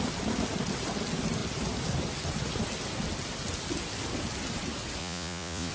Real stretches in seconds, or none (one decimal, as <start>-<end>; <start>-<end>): 0.0-5.0